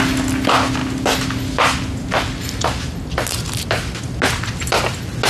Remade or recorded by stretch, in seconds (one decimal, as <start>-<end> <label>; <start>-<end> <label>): 0.0-5.3 recorded